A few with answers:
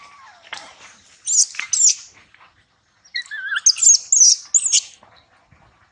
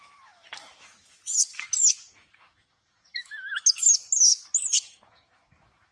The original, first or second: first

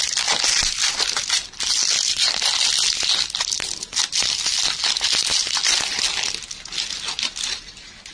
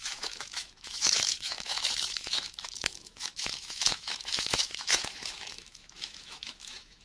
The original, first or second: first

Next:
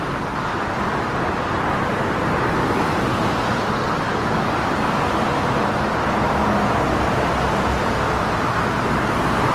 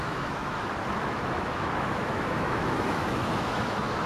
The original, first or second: first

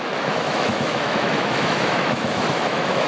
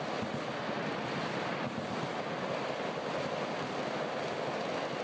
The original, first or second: second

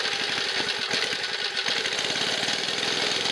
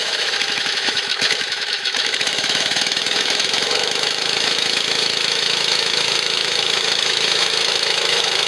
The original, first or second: first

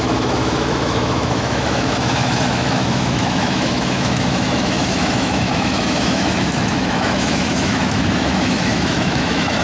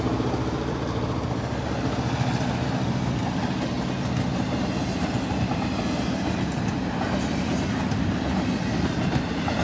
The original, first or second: second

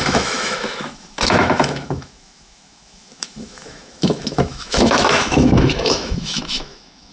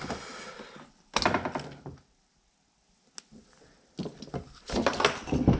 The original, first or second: second